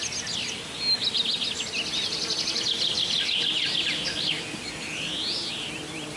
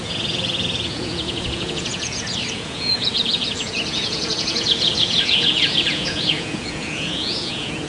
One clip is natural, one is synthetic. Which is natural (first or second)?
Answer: first